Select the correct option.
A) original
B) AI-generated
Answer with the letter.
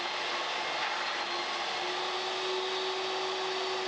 A